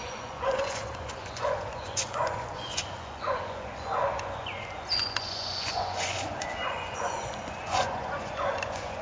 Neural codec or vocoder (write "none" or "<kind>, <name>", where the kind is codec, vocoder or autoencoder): vocoder, Vocos